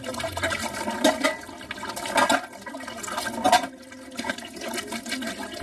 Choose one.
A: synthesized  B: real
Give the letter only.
B